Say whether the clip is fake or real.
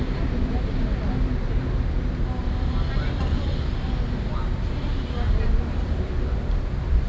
real